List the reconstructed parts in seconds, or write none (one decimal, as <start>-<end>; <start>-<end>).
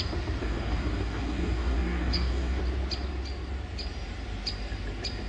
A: 0.4-2.6